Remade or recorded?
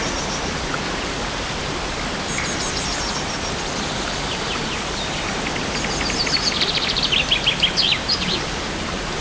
remade